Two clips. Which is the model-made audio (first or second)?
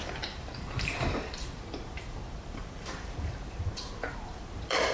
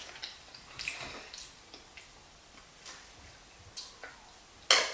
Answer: first